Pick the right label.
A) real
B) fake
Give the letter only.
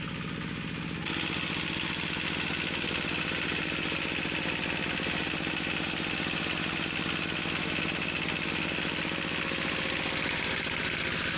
A